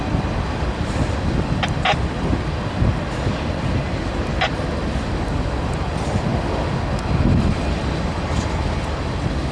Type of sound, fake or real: real